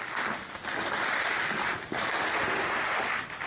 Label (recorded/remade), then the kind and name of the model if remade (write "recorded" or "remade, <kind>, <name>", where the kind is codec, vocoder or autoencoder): recorded